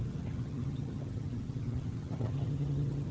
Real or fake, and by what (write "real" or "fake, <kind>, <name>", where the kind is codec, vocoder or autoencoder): fake, vocoder, HiFi-GAN